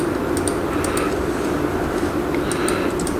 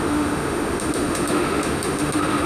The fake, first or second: second